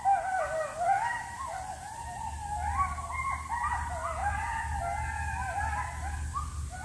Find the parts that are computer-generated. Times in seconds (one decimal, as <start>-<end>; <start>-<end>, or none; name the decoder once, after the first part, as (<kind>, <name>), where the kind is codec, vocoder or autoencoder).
none